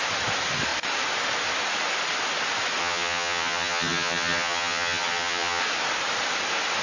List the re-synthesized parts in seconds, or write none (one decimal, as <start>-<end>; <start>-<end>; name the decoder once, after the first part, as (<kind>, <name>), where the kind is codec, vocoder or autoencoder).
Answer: 2.8-5.6 (vocoder, HiFi-GAN)